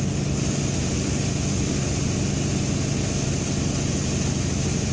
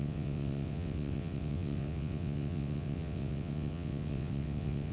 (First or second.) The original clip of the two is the first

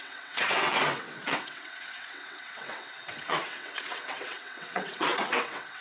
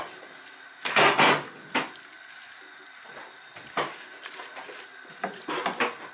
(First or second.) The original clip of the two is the second